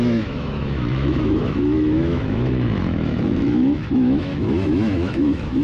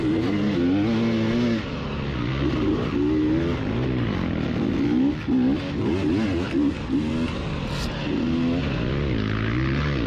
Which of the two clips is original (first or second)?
second